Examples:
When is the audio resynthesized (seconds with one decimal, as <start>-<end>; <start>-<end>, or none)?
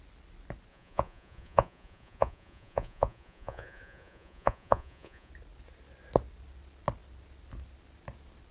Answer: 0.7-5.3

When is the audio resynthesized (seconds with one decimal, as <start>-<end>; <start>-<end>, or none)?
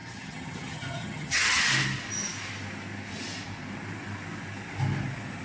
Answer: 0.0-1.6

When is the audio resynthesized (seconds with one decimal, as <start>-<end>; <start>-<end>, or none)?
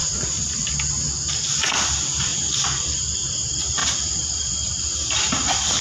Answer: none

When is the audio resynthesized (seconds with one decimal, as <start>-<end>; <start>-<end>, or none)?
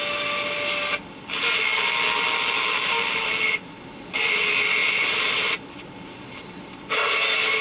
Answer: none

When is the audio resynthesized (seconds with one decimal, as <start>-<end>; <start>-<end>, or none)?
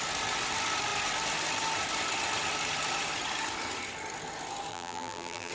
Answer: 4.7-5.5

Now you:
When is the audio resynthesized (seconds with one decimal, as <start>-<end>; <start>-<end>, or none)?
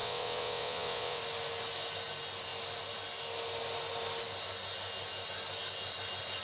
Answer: 0.0-1.2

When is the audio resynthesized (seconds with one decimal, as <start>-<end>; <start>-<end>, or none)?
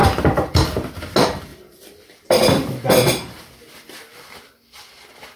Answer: 0.0-1.0; 1.5-2.9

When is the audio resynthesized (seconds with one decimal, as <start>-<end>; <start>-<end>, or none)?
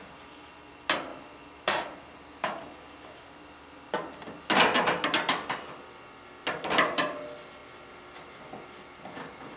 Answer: none